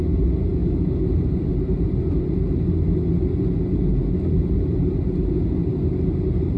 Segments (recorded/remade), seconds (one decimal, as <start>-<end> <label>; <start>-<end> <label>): 0.0-0.6 recorded; 0.6-1.1 remade; 1.1-6.6 recorded